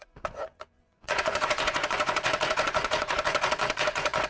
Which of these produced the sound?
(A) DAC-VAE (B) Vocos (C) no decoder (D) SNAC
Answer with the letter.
B